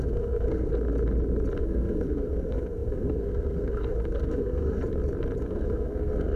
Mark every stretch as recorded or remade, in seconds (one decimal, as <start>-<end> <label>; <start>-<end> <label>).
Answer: 0.0-0.7 remade; 0.7-1.6 recorded; 1.6-4.8 remade; 4.8-5.4 recorded; 5.4-6.4 remade